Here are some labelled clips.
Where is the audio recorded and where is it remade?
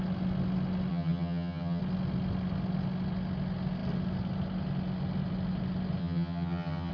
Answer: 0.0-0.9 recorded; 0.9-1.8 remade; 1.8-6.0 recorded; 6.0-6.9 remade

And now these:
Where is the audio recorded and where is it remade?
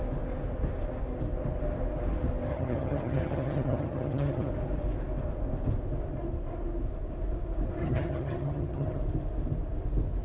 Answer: 0.0-2.5 recorded; 2.5-4.5 remade; 4.5-7.8 recorded; 7.8-9.0 remade; 9.0-10.2 recorded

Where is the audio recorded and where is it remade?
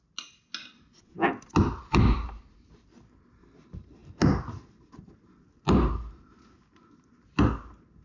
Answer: 0.0-8.0 recorded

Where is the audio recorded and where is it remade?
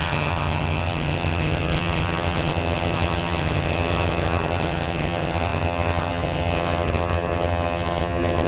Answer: 0.0-8.5 remade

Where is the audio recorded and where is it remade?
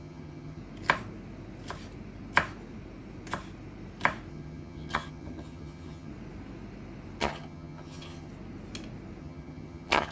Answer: 0.0-0.6 remade; 0.6-4.3 recorded; 4.3-6.1 remade; 6.1-7.2 recorded; 7.2-8.3 remade; 8.3-9.2 recorded; 9.2-10.1 remade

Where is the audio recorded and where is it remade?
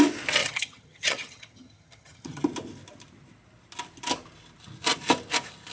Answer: 0.0-0.4 recorded; 0.4-2.4 remade; 2.4-5.7 recorded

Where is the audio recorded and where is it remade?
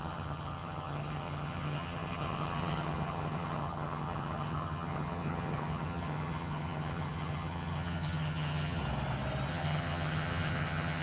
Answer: 0.0-8.8 remade; 8.8-9.5 recorded; 9.5-11.0 remade